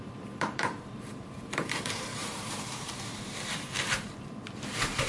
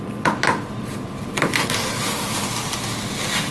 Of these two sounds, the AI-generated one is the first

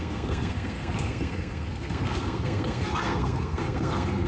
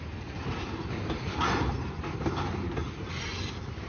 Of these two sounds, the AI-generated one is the first